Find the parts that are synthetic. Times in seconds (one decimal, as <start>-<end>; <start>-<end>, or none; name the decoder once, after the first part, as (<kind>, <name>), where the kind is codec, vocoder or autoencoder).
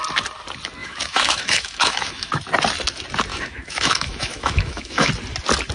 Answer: 0.8-2.3 (autoencoder, DAC-VAE); 3.3-5.1